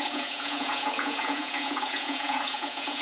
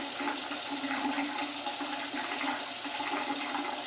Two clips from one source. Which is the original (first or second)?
second